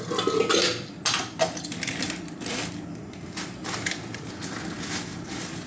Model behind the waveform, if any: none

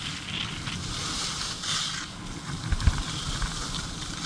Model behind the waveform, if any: none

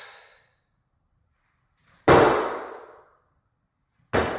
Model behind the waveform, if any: none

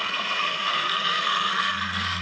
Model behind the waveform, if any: codec, SNAC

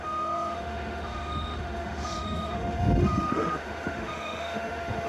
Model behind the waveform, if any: autoencoder, DAC-VAE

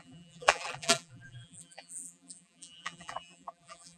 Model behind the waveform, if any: vocoder, BigVGAN v2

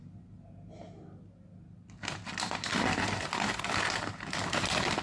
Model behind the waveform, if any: none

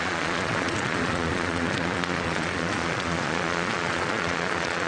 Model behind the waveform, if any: vocoder, Vocos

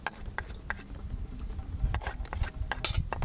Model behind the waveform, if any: none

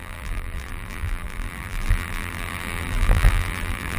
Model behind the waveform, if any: vocoder, BigVGAN v2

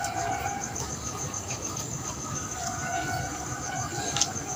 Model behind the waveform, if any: codec, DAC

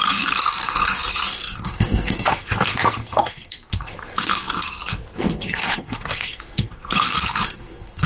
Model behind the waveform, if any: codec, SNAC